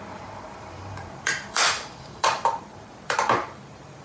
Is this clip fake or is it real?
fake